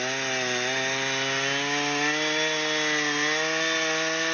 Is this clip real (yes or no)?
yes